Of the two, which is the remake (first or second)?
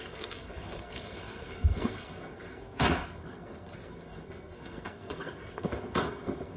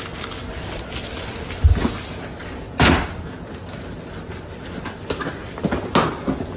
first